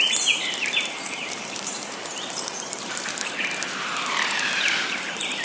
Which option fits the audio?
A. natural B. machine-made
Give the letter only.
B